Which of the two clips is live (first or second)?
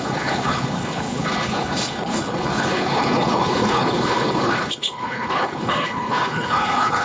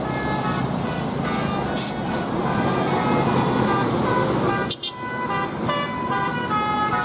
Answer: second